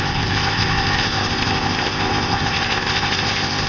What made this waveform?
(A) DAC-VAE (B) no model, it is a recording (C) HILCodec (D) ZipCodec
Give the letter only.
D